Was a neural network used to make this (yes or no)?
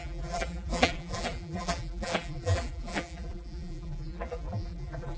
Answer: yes